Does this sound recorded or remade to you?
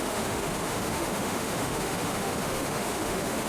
remade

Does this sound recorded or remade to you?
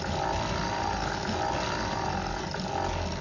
recorded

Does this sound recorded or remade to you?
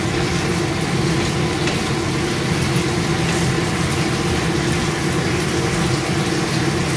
recorded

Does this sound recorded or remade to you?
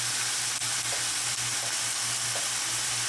recorded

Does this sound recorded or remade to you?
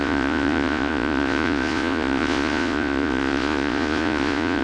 remade